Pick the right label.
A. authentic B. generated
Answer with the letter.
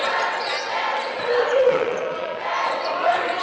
B